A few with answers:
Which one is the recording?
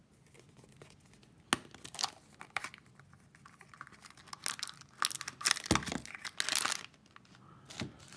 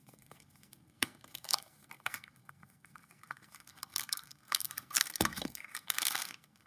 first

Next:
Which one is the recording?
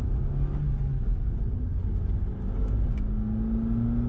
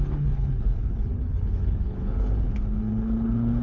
first